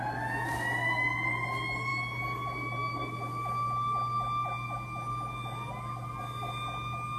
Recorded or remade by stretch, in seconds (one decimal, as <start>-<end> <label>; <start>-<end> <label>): 0.0-7.2 recorded